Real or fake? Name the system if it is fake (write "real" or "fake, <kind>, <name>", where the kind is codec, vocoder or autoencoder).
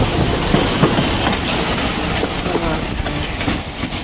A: real